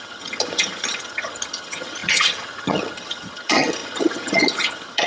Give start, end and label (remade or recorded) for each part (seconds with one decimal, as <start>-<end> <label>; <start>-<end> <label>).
0.0-5.1 remade